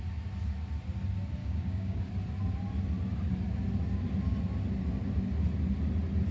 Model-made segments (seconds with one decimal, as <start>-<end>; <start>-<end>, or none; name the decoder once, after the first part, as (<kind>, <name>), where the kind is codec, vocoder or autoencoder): 1.4-2.0 (codec, DAC)